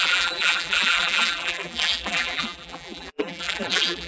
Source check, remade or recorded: remade